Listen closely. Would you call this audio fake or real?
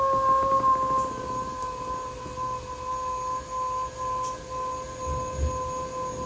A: real